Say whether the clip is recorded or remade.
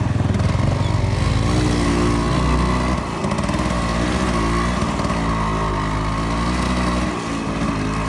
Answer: recorded